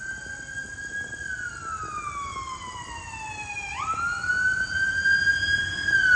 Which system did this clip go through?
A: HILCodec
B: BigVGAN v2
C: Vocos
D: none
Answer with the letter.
D